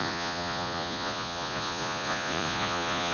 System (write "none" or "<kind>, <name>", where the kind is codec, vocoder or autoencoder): vocoder, Vocos